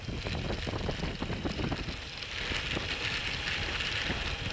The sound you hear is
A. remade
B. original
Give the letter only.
B